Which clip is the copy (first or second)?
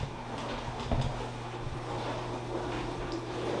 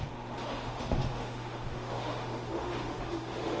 second